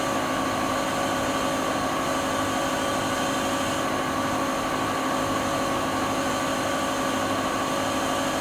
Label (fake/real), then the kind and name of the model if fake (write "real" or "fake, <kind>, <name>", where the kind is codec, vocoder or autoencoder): real